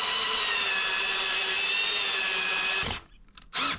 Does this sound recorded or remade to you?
recorded